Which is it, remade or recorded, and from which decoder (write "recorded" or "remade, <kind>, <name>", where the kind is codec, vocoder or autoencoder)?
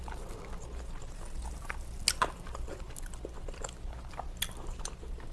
recorded